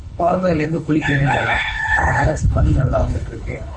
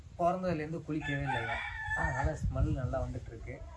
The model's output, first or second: first